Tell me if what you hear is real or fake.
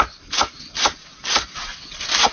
real